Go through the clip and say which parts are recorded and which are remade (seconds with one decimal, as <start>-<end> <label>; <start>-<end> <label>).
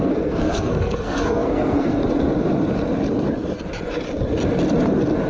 0.0-2.0 remade; 2.0-5.3 recorded